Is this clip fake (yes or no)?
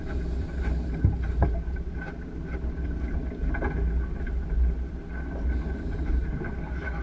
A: no